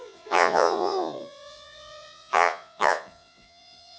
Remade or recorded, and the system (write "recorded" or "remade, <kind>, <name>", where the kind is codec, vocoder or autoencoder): remade, vocoder, Vocos